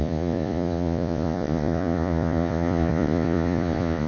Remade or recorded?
remade